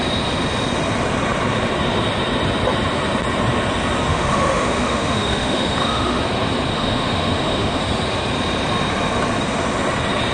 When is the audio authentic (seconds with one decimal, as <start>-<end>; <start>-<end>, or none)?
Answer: 0.0-4.1; 6.2-6.7; 7.8-10.3